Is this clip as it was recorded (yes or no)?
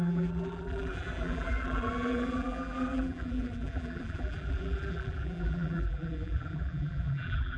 no